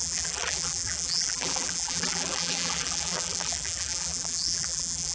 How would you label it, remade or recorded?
remade